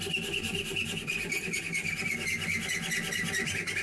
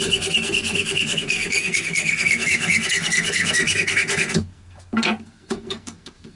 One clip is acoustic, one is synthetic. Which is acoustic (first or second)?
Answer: first